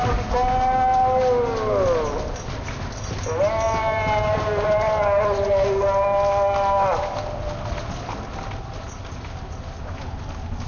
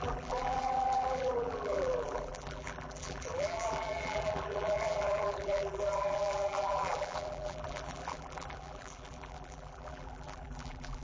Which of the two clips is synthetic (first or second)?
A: second